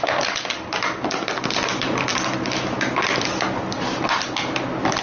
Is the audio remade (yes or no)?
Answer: no